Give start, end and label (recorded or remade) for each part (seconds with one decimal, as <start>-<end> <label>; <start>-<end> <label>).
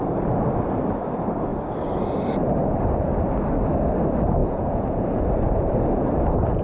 0.0-4.4 recorded; 4.4-5.2 remade; 5.2-6.6 recorded